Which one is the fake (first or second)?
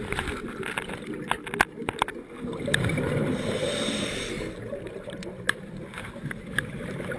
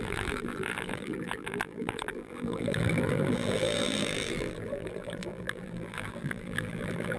second